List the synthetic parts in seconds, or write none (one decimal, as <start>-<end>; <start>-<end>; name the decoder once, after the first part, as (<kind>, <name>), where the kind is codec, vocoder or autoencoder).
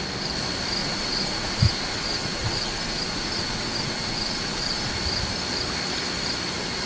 0.8-4.9 (vocoder, Vocos)